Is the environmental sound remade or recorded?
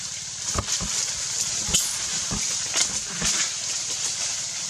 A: remade